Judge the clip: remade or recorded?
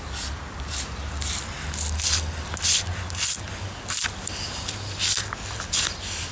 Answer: recorded